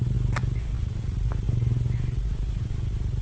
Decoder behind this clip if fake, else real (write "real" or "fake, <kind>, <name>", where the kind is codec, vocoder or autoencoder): real